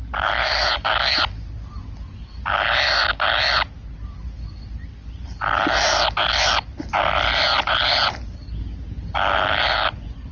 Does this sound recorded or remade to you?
recorded